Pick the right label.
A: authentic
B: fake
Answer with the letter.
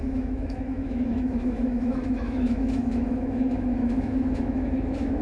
B